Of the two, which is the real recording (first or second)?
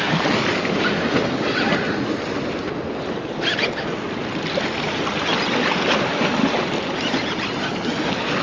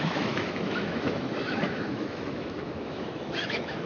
first